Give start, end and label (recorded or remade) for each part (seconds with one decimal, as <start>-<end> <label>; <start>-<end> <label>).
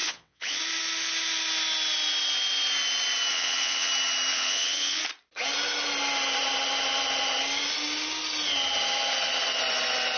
0.0-0.6 remade; 0.6-3.3 recorded; 3.3-3.9 remade; 3.9-4.3 recorded; 4.3-5.0 remade; 5.0-10.2 recorded